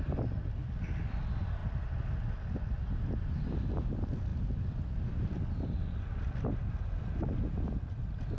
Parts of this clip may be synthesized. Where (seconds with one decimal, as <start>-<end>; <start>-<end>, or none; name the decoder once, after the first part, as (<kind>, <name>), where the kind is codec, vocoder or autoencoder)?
0.0-1.6 (vocoder, BigVGAN v2); 3.1-8.4